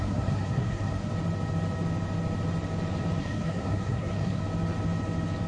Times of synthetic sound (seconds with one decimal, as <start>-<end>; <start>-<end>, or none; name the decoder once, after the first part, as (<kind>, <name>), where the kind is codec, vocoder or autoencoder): 0.0-1.1 (codec, SNAC); 3.2-4.4